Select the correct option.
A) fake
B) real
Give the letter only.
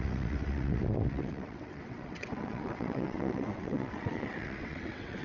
A